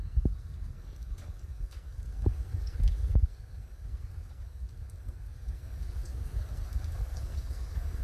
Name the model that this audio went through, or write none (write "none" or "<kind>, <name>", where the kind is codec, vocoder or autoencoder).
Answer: codec, SNAC